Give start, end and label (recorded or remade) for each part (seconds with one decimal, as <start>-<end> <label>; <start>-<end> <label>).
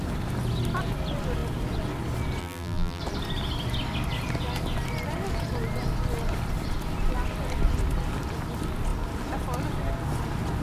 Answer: 0.0-2.4 recorded; 2.4-3.0 remade; 3.0-10.6 recorded